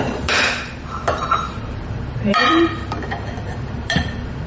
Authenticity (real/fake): fake